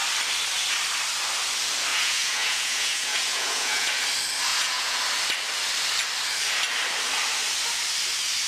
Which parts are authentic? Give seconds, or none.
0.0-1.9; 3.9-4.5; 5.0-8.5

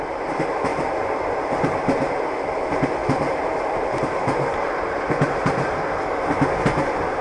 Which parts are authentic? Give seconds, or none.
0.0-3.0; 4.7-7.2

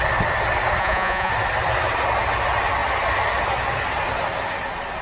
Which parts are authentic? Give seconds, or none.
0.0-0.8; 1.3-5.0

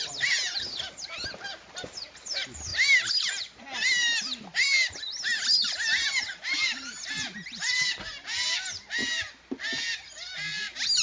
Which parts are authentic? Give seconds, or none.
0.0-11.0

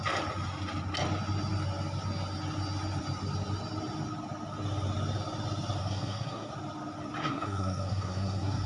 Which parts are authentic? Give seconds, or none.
0.0-5.8; 6.5-7.2